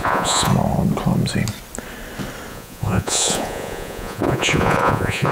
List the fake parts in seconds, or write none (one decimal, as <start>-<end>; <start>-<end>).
0.0-0.5; 2.5-5.3